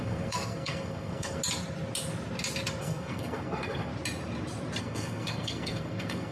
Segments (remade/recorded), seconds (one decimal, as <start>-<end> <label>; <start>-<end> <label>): 0.0-1.4 remade; 1.4-2.8 recorded; 2.8-3.9 remade; 3.9-4.8 recorded; 4.8-6.3 remade